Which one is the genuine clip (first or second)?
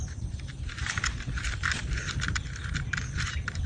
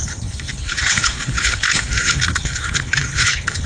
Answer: first